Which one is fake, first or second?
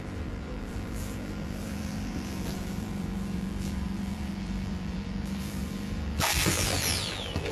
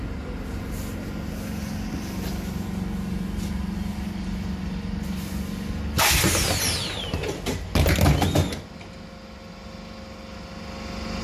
first